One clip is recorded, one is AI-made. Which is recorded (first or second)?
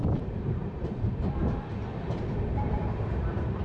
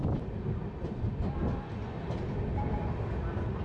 second